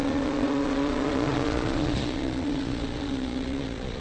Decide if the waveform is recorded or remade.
remade